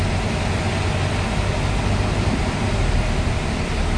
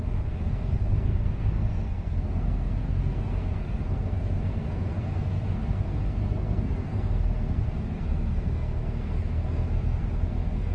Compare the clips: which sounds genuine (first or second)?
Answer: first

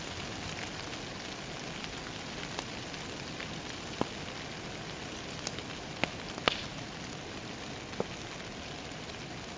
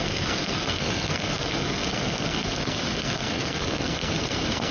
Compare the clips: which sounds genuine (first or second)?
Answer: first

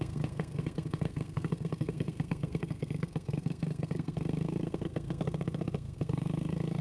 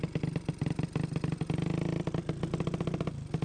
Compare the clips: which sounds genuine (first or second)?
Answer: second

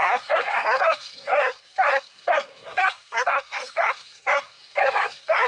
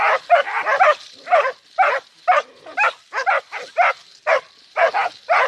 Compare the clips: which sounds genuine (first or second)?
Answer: second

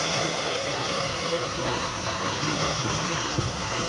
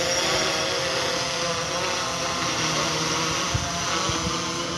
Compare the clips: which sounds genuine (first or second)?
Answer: second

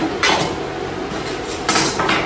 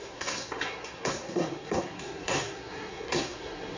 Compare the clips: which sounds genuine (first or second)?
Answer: first